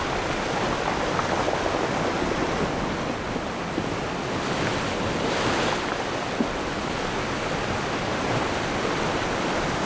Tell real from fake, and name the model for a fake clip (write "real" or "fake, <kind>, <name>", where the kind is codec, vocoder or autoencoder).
real